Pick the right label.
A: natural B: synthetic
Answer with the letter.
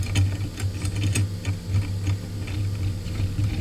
A